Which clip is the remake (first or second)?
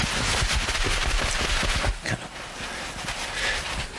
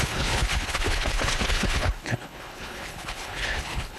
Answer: second